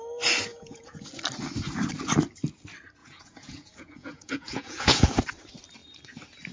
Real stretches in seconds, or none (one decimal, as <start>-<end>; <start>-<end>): 0.0-0.5; 1.1-3.0; 5.1-6.5